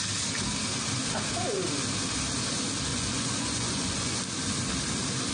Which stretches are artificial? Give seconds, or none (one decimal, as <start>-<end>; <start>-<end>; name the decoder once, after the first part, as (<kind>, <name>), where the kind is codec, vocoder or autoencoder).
2.9-4.2 (vocoder, Vocos)